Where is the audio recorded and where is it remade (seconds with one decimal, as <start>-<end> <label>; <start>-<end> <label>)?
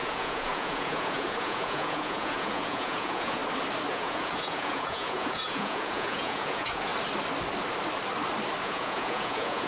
0.0-3.4 remade; 3.4-3.9 recorded; 3.9-6.9 remade; 6.9-8.6 recorded; 8.6-9.7 remade